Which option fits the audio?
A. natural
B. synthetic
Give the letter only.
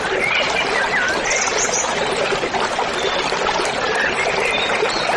A